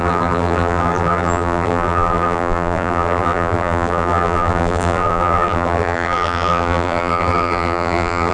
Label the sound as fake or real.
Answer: fake